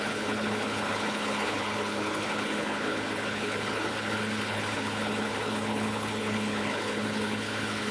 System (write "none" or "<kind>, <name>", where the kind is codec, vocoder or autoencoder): codec, HILCodec